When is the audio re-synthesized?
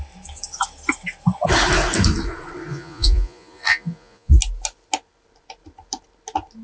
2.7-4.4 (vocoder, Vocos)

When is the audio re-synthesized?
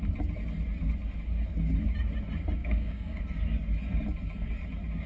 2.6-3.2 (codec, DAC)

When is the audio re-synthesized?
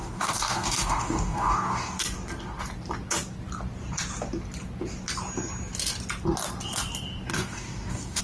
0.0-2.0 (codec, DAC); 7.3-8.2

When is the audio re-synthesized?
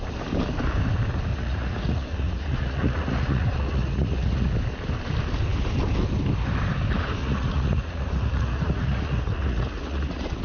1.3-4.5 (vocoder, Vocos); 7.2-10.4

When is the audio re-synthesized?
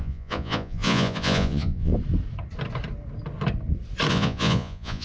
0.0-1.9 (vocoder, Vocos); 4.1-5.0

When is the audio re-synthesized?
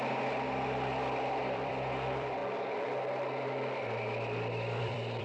0.0-2.4 (vocoder, BigVGAN v2); 4.8-5.2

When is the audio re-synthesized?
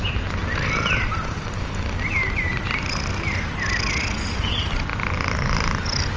none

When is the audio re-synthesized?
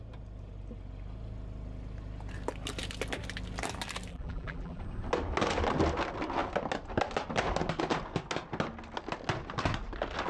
4.1-4.8 (vocoder, BigVGAN v2)